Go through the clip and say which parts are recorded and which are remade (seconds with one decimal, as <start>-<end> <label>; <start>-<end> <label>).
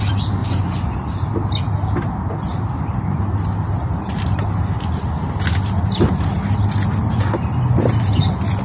0.0-0.4 recorded; 0.4-1.0 remade; 1.0-8.6 recorded